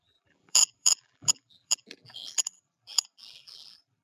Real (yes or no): no